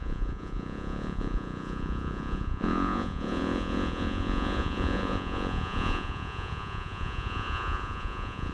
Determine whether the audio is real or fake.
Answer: fake